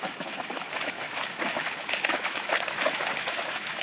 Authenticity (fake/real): fake